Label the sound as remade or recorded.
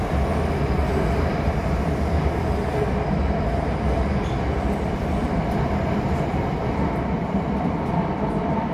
remade